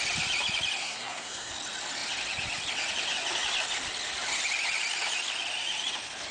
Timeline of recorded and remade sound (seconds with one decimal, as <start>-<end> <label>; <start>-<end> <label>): 0.0-0.8 recorded; 0.8-1.5 remade; 1.5-6.3 recorded